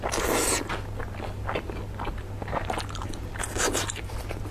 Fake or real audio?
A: real